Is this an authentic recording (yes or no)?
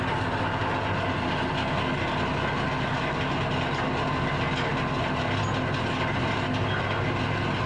yes